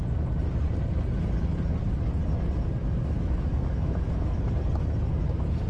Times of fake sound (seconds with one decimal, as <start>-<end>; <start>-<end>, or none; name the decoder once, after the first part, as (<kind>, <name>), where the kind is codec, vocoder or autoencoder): 2.8-4.4 (autoencoder, DAC-VAE)